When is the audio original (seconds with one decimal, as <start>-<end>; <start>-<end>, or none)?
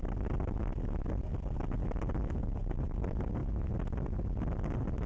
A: 0.7-2.3; 3.4-5.1